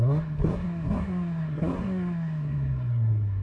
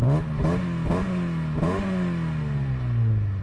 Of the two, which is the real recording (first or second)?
second